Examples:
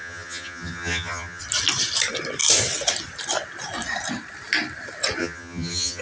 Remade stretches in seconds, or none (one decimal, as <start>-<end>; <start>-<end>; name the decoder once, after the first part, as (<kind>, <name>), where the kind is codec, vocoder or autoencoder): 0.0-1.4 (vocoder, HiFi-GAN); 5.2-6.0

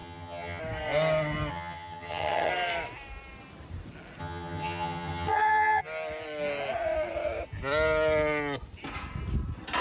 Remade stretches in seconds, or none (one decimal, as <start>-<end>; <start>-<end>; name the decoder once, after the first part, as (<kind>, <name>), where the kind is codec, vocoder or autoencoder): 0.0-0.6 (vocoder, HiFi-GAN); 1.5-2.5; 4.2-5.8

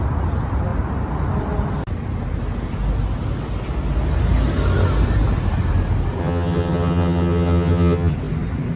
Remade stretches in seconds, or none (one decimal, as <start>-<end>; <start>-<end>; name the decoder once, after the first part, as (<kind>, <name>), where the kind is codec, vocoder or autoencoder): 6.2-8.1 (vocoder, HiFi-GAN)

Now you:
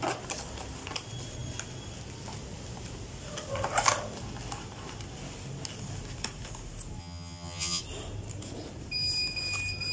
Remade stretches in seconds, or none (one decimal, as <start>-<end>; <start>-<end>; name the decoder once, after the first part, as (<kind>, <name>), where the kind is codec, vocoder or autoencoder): 7.0-7.8 (vocoder, HiFi-GAN)